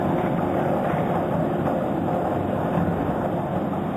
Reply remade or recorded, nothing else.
recorded